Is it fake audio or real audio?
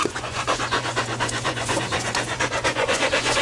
fake